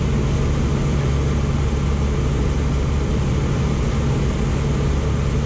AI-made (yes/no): no